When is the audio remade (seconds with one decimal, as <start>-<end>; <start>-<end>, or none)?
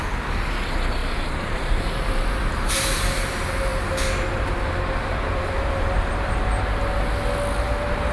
1.0-2.7; 3.7-6.7